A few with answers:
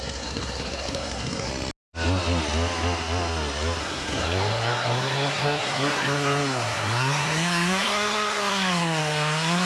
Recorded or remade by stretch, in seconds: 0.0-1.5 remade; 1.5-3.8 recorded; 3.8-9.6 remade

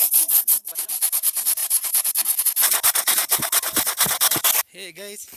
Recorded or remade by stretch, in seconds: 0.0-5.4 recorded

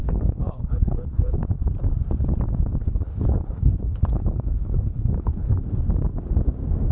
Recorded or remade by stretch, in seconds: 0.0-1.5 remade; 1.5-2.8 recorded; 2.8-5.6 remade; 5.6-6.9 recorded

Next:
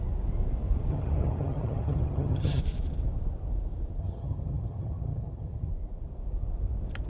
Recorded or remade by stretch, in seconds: 0.0-0.9 recorded; 0.9-2.6 remade; 2.6-4.0 recorded; 4.0-5.7 remade; 5.7-7.1 recorded

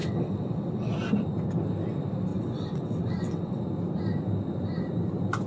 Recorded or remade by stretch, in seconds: 0.0-0.9 remade; 0.9-2.3 recorded; 2.3-3.6 remade; 3.6-5.5 recorded

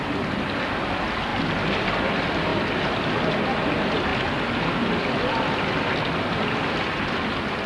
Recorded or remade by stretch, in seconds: 0.0-1.3 recorded; 1.3-2.1 remade; 2.1-4.1 recorded; 4.1-7.1 remade; 7.1-7.7 recorded

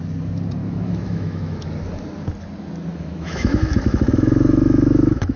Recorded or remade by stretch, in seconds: 0.0-0.6 recorded; 0.6-1.7 remade; 1.7-2.9 recorded; 2.9-5.4 remade

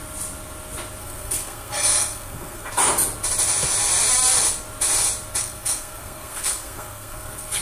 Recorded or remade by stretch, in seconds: 0.0-1.0 recorded; 1.0-2.7 remade; 2.7-5.4 recorded; 5.4-7.6 remade